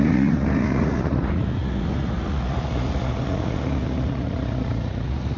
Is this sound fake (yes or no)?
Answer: yes